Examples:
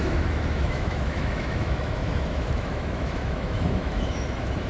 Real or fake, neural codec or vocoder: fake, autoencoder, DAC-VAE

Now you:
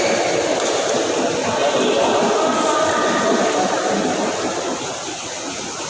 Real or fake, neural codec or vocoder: real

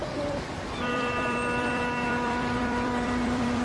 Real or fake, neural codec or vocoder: fake, vocoder, BigVGAN v2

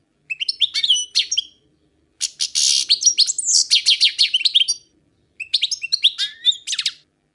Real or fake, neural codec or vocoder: real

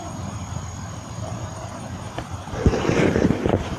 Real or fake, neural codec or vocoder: fake, vocoder, BigVGAN v2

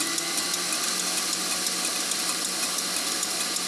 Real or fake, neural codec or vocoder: real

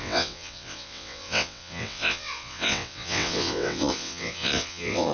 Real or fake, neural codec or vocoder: fake, vocoder, WaveNeXt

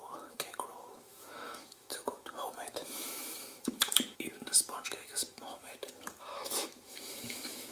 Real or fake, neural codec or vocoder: fake, autoencoder, DAC-VAE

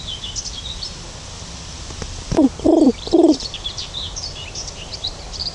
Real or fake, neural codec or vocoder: fake, vocoder, BigVGAN v2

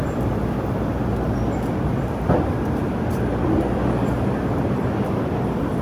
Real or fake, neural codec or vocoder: real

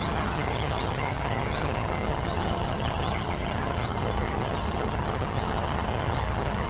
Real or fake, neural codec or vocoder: fake, vocoder, HiFi-GAN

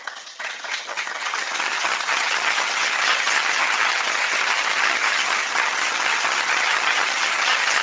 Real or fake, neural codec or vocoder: fake, vocoder, HiFi-GAN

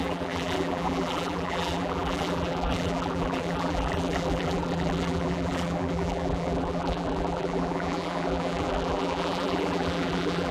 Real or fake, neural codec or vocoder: fake, vocoder, BigVGAN v2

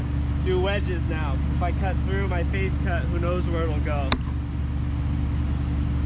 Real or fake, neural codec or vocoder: real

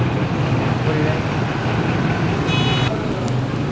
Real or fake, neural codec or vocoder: real